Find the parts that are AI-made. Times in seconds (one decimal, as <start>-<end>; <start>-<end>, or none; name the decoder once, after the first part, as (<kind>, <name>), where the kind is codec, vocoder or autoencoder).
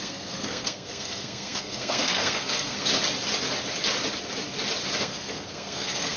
0.0-2.9 (codec, SNAC); 5.0-6.2